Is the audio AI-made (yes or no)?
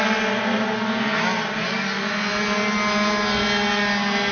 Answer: no